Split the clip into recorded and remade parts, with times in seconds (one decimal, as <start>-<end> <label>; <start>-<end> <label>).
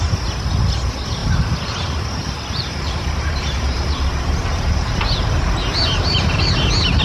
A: 0.0-1.2 recorded; 1.2-5.0 remade; 5.0-7.0 recorded